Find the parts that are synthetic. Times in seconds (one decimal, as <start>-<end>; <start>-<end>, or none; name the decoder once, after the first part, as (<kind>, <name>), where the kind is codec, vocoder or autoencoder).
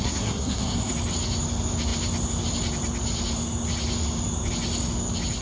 0.0-0.9 (codec, SNAC)